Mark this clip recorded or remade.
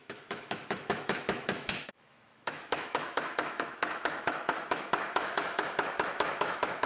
remade